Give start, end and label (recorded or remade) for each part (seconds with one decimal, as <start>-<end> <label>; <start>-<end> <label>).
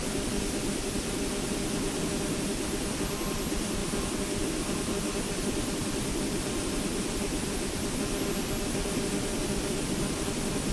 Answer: 0.0-10.7 recorded